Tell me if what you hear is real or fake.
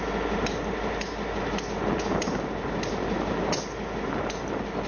real